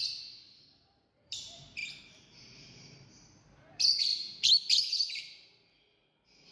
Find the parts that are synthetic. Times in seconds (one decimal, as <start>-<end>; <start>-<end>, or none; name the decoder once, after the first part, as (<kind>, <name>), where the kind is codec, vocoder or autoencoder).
0.0-6.5 (vocoder, BigVGAN v2)